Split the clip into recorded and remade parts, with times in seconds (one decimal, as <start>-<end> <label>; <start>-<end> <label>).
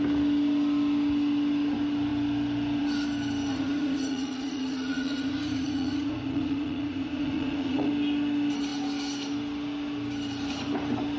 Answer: 0.0-3.5 recorded; 3.5-7.9 remade; 7.9-11.2 recorded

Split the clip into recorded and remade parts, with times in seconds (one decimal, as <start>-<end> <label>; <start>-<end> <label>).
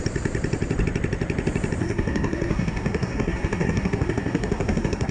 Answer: 0.0-1.8 recorded; 1.8-5.1 remade